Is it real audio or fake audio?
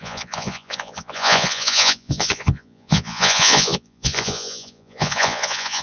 fake